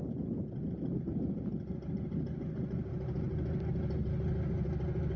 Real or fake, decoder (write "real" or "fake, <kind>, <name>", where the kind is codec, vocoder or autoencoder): real